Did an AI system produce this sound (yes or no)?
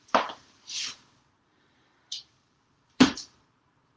yes